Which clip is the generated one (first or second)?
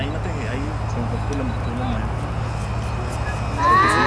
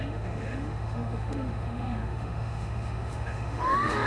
second